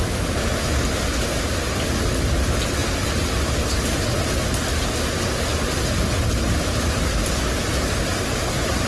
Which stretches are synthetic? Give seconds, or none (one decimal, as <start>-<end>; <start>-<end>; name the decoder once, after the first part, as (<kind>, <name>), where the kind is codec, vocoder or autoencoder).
none